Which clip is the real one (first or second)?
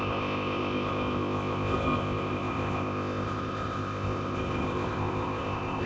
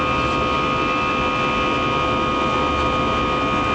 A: second